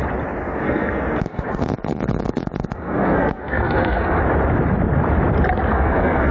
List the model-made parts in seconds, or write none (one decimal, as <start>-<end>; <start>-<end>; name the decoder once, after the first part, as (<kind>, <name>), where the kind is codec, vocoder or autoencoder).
0.4-4.2 (codec, SNAC); 5.7-6.3